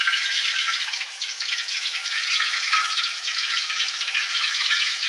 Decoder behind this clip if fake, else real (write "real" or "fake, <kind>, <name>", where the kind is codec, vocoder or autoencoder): fake, autoencoder, DAC-VAE